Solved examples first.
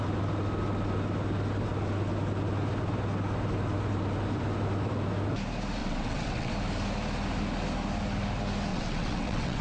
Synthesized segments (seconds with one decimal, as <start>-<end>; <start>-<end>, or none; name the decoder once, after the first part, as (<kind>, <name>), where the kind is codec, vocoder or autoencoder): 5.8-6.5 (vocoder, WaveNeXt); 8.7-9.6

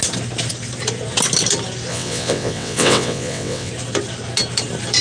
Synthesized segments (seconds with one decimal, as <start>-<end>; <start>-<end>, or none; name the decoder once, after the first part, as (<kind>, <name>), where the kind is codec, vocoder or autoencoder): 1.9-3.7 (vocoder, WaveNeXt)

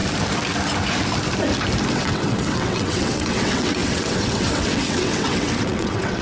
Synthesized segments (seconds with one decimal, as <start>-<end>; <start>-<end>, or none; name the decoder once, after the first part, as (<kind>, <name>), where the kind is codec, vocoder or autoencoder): 1.9-6.2 (vocoder, WaveNeXt)

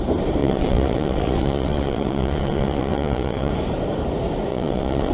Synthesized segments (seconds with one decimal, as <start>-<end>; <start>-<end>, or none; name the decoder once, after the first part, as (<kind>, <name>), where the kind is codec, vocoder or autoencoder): 0.4-3.5 (vocoder, WaveNeXt); 4.5-5.1

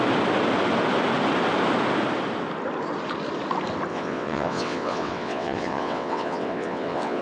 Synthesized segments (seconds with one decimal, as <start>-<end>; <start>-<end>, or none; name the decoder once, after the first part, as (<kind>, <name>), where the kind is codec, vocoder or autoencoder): 3.9-7.2 (vocoder, WaveNeXt)